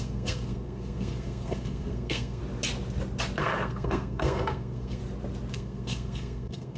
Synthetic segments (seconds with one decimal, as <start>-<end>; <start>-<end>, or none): 0.0-2.4; 3.4-5.0; 5.5-6.8